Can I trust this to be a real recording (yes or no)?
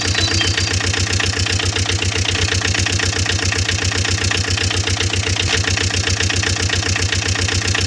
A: yes